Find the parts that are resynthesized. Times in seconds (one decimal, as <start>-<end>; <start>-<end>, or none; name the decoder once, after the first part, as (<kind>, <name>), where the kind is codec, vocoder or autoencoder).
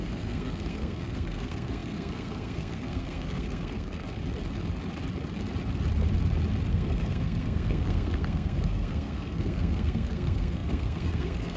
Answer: 0.0-4.0 (codec, SNAC); 6.7-11.6